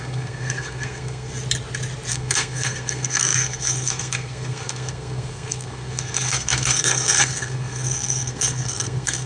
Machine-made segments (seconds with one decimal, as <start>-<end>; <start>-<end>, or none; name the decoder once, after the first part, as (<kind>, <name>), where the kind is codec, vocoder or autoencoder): 0.0-1.3 (codec, SNAC); 2.1-9.3